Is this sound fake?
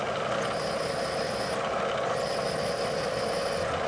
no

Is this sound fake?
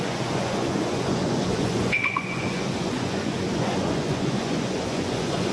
yes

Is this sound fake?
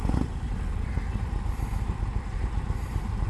no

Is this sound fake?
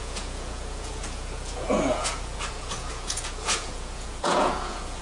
yes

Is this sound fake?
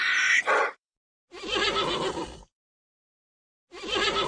no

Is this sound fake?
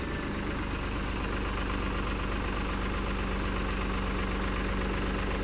no